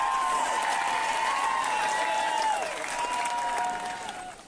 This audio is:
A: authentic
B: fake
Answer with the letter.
A